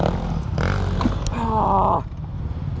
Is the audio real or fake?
real